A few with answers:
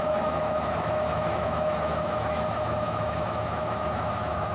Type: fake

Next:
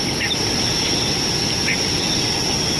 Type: real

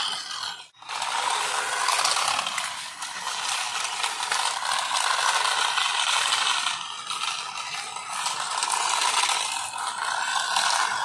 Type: real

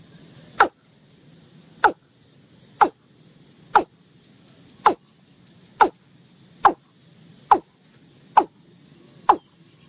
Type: real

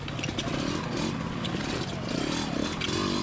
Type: real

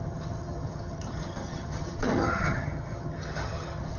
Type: fake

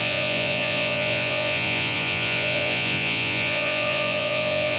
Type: fake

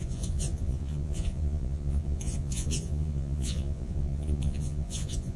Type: fake